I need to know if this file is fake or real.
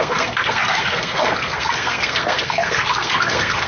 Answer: fake